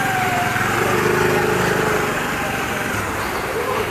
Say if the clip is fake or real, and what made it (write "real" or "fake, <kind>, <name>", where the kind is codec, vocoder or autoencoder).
real